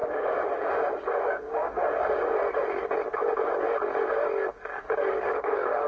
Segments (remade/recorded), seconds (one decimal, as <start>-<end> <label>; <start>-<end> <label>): 0.0-2.3 remade; 2.3-4.5 recorded; 4.5-5.9 remade